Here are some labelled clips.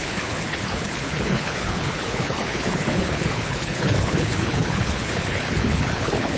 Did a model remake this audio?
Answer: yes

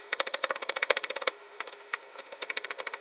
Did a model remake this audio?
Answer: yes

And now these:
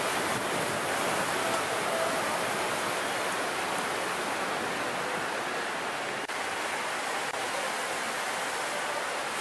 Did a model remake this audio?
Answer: no